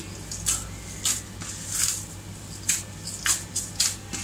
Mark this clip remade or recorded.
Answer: recorded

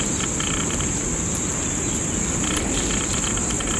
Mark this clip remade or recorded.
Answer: recorded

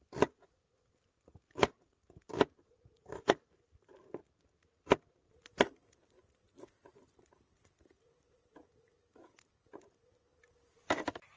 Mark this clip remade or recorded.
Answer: recorded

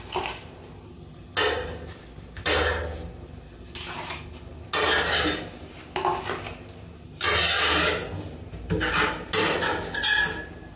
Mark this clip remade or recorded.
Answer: recorded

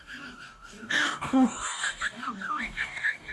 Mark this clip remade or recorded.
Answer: remade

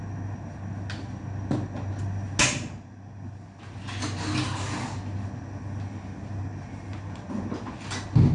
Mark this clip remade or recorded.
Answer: recorded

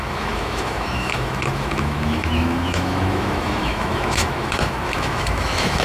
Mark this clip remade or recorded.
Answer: remade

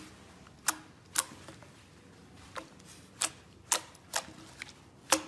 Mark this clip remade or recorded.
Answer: recorded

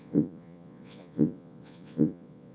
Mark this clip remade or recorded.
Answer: remade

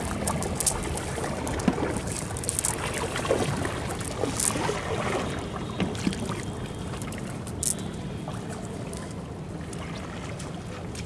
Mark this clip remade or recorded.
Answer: recorded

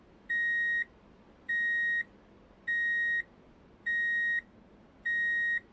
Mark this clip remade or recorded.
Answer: recorded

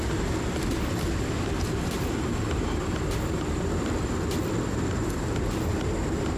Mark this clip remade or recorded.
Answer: remade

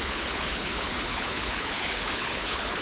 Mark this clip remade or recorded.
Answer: remade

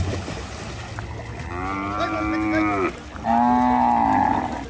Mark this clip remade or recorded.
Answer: recorded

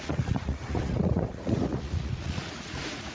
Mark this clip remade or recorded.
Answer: remade